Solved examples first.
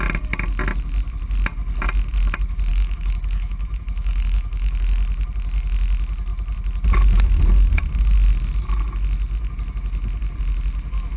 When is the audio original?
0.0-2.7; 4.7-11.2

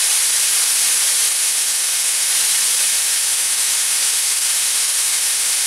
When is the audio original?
0.0-1.3; 2.3-2.9